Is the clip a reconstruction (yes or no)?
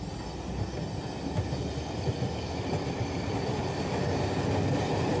no